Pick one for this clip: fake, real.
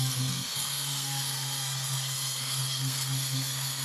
fake